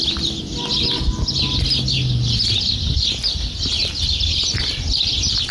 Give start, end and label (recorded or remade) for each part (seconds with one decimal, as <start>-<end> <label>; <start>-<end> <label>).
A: 0.0-3.8 recorded; 3.8-4.4 remade; 4.4-5.5 recorded